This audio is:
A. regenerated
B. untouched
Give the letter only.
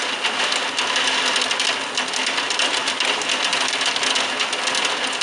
B